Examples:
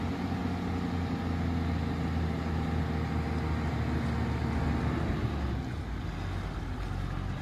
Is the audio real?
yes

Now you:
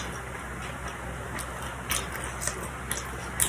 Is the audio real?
yes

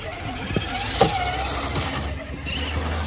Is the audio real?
yes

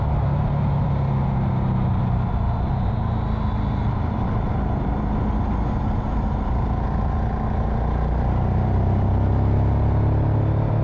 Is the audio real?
yes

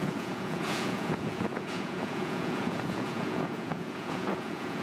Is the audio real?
no